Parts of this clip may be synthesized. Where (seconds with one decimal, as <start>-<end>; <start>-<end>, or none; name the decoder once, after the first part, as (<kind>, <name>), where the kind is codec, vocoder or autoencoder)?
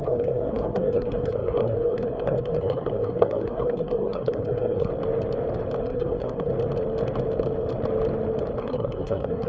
0.0-4.9 (codec, SNAC); 5.8-6.5; 8.6-9.5